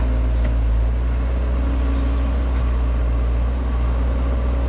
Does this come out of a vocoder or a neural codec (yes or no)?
no